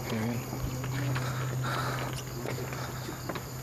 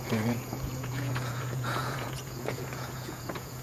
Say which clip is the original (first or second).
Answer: first